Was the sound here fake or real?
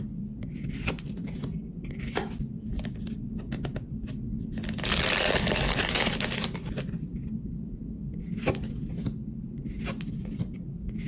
real